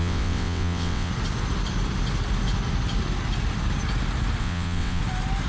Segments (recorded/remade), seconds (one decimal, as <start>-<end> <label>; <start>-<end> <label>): 0.0-1.1 remade; 1.1-4.4 recorded; 4.4-5.0 remade; 5.0-5.5 recorded